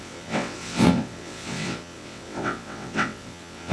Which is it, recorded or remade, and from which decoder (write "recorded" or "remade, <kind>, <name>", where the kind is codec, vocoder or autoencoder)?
remade, vocoder, WaveNeXt